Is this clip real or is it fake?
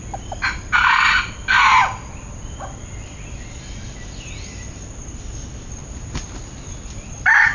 real